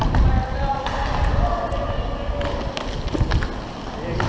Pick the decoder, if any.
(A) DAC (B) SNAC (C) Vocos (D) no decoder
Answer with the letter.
D